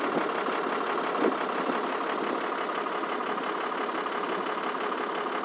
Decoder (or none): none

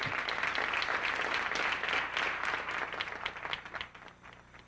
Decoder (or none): none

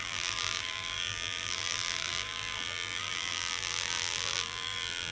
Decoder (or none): vocoder, BigVGAN v2